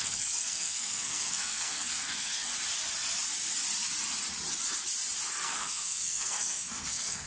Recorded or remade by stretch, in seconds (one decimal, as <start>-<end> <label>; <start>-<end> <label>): 0.0-2.5 remade; 2.5-5.3 recorded; 5.3-7.3 remade